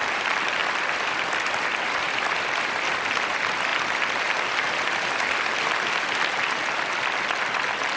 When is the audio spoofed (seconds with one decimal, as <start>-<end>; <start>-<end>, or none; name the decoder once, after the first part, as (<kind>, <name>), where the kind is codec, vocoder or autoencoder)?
0.0-3.7 (vocoder, BigVGAN v2); 7.3-8.0